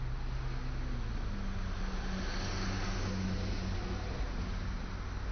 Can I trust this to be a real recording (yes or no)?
yes